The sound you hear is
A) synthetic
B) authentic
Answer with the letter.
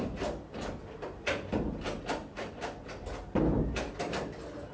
B